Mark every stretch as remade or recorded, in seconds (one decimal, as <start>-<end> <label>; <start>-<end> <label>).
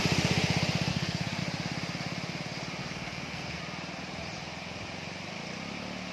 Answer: 0.0-0.9 recorded; 0.9-1.4 remade; 1.4-2.8 recorded; 2.8-3.6 remade; 3.6-6.1 recorded